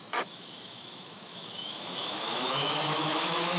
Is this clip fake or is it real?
fake